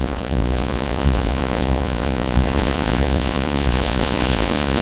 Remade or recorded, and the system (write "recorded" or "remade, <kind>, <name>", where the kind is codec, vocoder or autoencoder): remade, vocoder, Vocos